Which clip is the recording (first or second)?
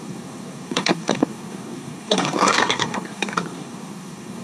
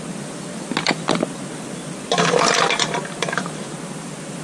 second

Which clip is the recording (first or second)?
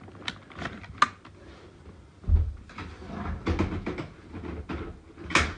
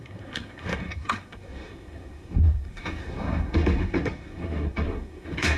first